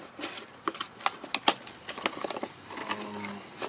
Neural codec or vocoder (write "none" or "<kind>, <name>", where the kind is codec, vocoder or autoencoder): none